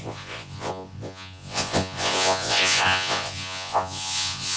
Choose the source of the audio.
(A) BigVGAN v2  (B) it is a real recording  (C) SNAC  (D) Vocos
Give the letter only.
D